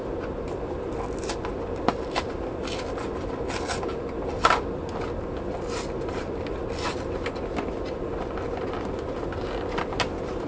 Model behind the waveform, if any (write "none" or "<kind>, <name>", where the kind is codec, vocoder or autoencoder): none